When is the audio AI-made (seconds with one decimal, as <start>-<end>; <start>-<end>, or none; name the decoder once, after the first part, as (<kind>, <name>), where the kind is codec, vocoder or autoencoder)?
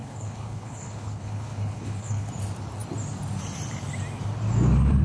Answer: 0.0-2.3 (codec, HILCodec)